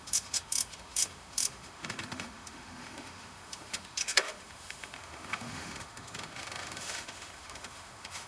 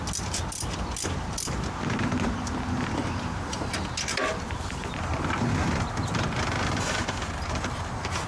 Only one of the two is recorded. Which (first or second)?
second